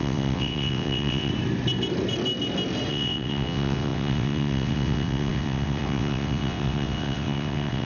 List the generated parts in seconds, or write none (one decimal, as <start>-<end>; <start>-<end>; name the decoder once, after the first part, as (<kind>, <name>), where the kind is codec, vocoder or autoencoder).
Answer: 0.0-1.3 (vocoder, WaveNeXt); 2.9-7.8